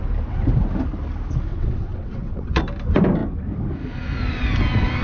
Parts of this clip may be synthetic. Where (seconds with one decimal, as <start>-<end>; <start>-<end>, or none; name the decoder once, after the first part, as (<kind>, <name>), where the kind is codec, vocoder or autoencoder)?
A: 1.5-2.6 (vocoder, WaveNeXt)